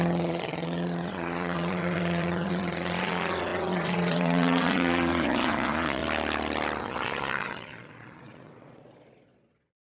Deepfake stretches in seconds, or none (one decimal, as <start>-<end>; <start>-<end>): 0.0-6.0; 6.8-10.0